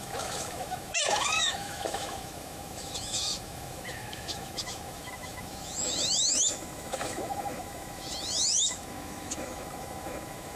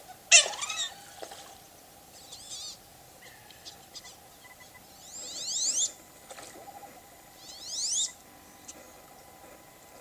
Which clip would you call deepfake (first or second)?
first